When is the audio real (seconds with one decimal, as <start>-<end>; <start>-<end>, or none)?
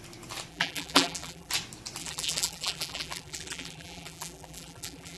0.0-0.5; 1.5-2.0